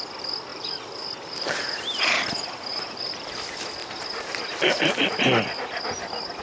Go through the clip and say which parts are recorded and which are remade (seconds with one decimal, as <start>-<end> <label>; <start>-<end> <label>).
0.0-0.5 recorded; 0.5-1.3 remade; 1.3-2.7 recorded; 2.7-3.3 remade; 3.3-6.4 recorded